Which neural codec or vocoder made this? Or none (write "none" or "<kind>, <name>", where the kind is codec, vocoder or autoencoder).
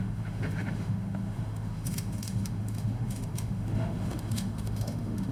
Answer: autoencoder, DAC-VAE